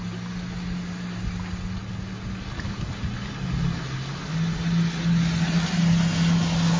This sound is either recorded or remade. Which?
recorded